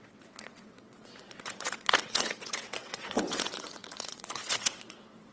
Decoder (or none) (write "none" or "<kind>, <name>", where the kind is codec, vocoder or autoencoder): vocoder, WaveNeXt